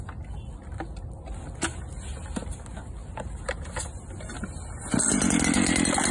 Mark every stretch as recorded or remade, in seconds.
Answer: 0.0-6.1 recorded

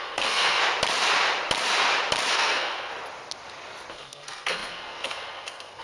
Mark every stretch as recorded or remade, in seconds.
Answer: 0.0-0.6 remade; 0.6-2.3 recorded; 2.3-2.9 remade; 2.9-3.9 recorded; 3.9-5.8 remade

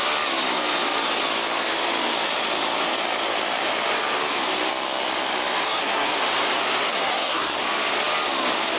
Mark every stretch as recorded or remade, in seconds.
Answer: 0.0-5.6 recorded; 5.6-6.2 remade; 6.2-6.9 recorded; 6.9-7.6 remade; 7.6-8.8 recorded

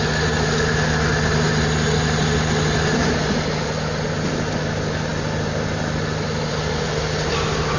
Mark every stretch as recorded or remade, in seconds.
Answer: 0.0-7.8 recorded

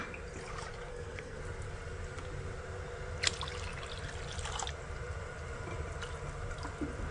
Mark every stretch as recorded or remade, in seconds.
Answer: 0.0-0.9 recorded; 0.9-1.4 remade; 1.4-7.1 recorded

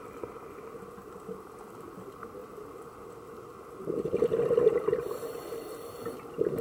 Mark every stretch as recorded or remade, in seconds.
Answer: 0.0-6.6 recorded